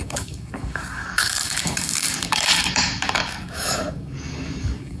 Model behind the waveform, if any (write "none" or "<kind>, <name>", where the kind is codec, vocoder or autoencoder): codec, DAC